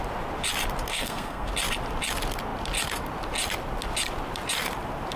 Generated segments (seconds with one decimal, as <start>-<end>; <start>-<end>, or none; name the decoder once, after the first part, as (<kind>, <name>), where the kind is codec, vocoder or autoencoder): 0.9-1.5 (codec, SNAC)